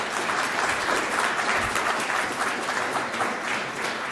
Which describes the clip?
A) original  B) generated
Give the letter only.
A